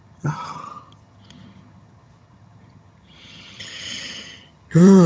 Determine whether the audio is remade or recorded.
remade